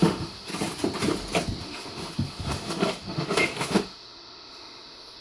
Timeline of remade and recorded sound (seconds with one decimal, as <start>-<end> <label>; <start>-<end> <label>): 0.0-0.5 remade; 0.5-1.6 recorded; 1.6-5.2 remade

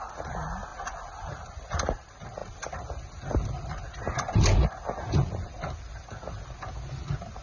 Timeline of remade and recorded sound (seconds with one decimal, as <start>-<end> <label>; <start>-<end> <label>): 0.0-7.4 recorded

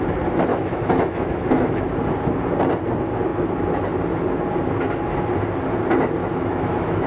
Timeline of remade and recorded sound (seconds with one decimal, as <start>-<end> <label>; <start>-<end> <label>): 0.0-0.5 recorded; 0.5-1.8 remade; 1.8-6.2 recorded; 6.2-7.1 remade

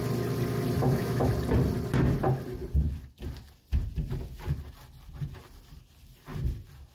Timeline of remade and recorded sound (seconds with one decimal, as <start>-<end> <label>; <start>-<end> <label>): 0.0-0.8 recorded; 0.8-1.3 remade; 1.3-6.9 recorded